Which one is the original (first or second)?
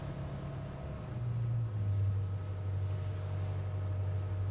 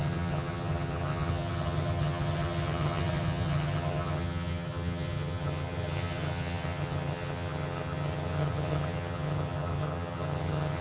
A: first